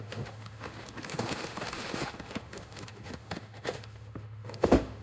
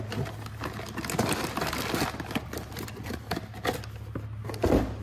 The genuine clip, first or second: second